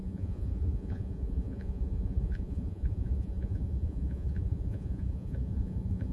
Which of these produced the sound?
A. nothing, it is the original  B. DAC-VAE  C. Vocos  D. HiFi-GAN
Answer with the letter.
C